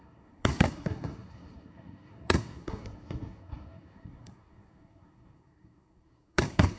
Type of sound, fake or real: fake